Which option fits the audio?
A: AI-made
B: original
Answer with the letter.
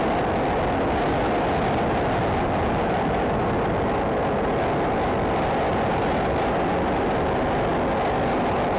B